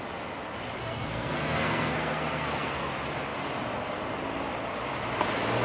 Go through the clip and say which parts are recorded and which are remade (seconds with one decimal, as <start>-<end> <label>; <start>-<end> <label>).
0.0-0.8 recorded; 0.8-2.9 remade; 2.9-5.6 recorded